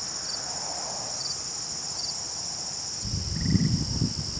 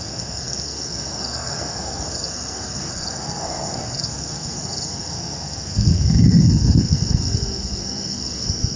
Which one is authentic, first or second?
first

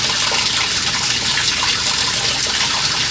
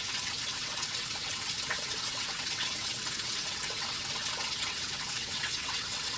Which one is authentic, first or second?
first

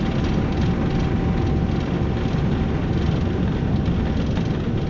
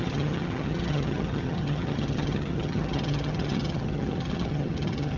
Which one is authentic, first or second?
first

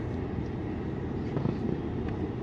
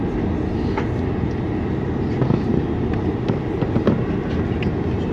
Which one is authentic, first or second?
second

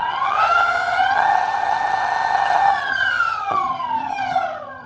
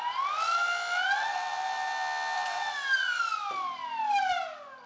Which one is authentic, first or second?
second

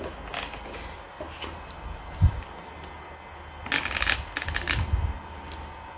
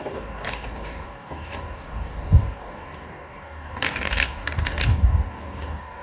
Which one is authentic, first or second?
first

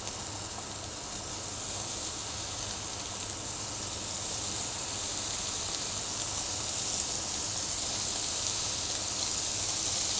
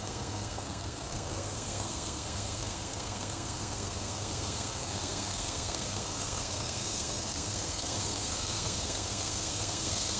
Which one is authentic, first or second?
first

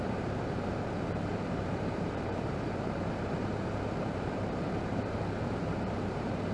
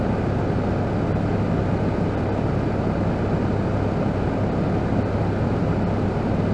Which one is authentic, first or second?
second